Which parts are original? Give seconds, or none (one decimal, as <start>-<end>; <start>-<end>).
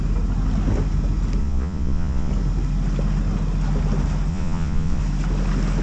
0.0-1.4; 2.3-4.3; 5.0-5.8